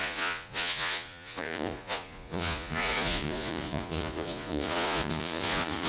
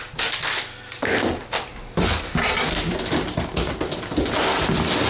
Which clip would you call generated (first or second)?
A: first